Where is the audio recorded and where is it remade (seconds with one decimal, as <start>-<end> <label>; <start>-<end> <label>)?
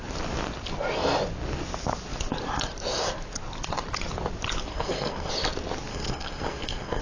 0.0-4.7 recorded; 4.7-5.3 remade; 5.3-5.9 recorded; 5.9-7.0 remade